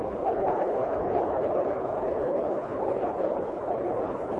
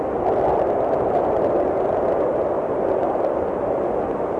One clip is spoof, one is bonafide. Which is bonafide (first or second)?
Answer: second